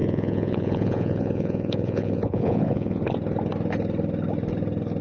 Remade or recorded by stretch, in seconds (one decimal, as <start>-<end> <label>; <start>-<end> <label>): 0.0-3.0 remade; 3.0-5.0 recorded